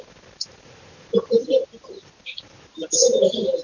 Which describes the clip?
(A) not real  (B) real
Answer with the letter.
B